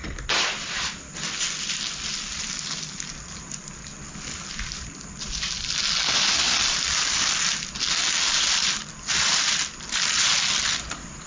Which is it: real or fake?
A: real